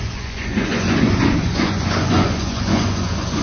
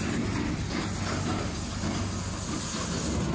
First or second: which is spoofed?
first